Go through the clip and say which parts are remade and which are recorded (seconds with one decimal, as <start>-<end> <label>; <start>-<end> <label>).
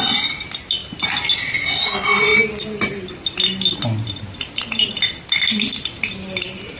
0.0-6.8 recorded